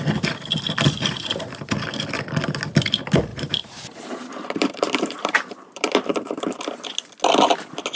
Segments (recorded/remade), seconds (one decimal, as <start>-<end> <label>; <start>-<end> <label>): 0.0-3.3 recorded; 3.3-6.6 remade; 6.6-8.0 recorded